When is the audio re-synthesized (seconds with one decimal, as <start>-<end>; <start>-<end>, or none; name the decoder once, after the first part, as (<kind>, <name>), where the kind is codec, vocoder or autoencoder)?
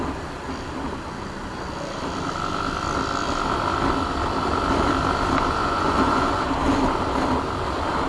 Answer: 5.6-6.4 (vocoder, Vocos)